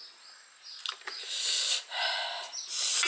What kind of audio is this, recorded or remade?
recorded